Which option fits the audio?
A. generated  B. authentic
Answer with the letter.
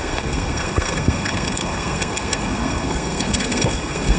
A